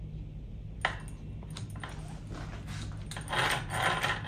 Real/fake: real